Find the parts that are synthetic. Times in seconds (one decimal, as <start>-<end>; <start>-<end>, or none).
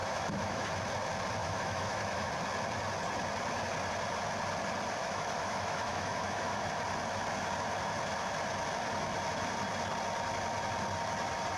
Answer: 0.0-0.7; 1.4-2.3; 5.0-6.7